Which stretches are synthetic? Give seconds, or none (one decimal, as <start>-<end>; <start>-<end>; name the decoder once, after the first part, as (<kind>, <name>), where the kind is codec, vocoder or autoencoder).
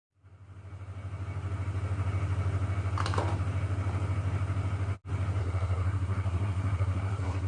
5.4-7.5 (codec, SNAC)